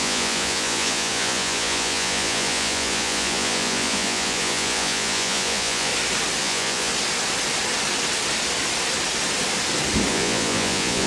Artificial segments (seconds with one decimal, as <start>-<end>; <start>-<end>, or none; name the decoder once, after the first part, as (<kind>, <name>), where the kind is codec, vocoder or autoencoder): 0.0-5.9 (vocoder, Vocos); 6.4-6.9; 10.1-11.1